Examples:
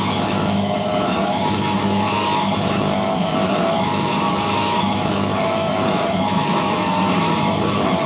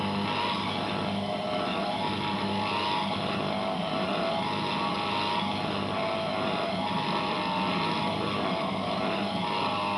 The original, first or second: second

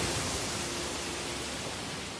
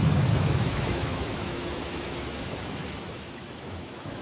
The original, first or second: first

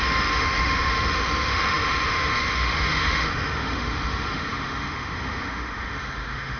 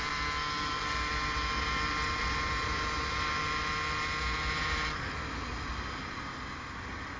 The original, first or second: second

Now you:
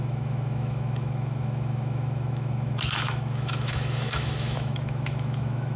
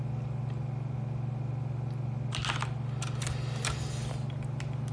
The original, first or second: second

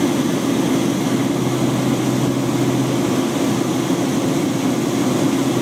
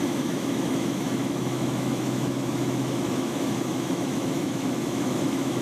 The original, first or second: first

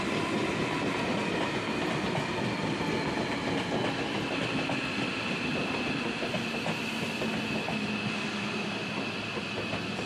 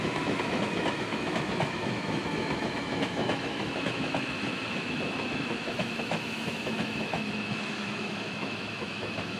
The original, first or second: first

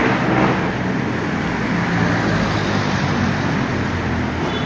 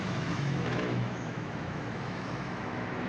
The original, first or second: first